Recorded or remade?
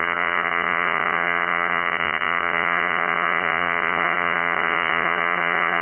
remade